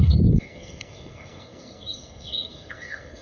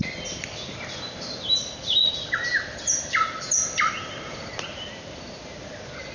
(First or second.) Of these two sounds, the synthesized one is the first